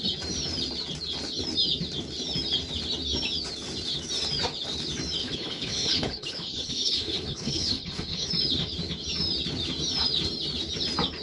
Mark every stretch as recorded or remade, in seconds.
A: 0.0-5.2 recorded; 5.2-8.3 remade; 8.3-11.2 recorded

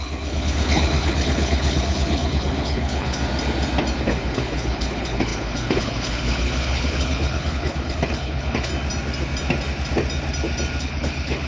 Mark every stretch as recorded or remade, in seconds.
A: 0.0-3.2 remade; 3.2-4.0 recorded; 4.0-8.7 remade; 8.7-10.8 recorded; 10.8-11.5 remade

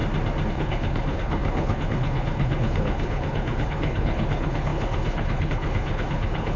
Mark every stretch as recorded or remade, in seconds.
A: 0.0-0.5 recorded; 0.5-6.6 remade

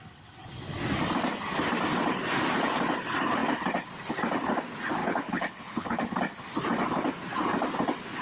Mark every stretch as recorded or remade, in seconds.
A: 0.0-5.0 recorded; 5.0-6.2 remade; 6.2-8.2 recorded

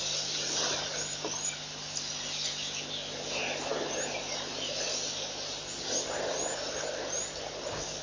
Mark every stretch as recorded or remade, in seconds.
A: 0.0-8.0 recorded